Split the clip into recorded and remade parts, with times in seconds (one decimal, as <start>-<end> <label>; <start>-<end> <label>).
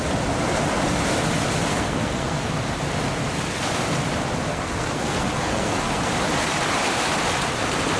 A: 0.0-1.7 recorded; 1.7-2.5 remade; 2.5-4.5 recorded; 4.5-6.1 remade; 6.1-8.0 recorded